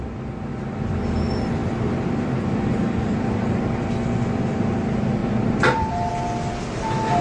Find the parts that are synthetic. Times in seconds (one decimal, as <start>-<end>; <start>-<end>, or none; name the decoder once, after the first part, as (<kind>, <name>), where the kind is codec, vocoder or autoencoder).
0.5-1.0 (vocoder, BigVGAN v2); 1.6-3.9; 5.2-6.1